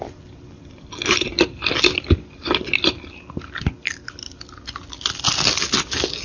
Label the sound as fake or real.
real